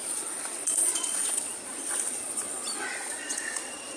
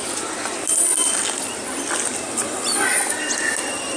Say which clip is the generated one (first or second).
first